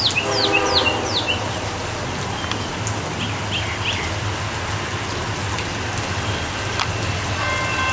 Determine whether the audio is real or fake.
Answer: real